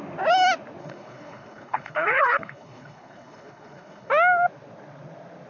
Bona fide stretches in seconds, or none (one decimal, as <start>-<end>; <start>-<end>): 0.0-0.8; 4.1-5.5